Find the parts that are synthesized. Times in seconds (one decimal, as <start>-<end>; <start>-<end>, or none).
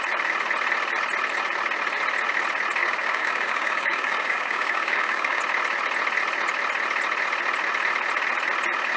2.8-5.4